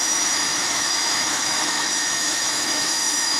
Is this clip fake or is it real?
fake